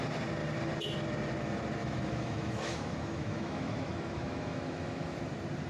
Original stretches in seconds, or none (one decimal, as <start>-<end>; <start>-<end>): 0.0-1.8; 5.2-5.7